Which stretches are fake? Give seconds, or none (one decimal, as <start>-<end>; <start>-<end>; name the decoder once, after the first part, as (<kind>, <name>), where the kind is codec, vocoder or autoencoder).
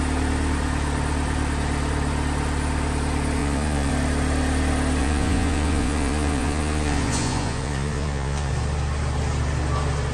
3.4-3.9 (vocoder, Vocos); 5.0-8.5